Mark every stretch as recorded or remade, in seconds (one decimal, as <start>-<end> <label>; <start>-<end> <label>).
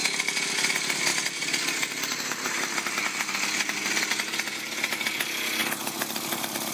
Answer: 0.0-6.7 recorded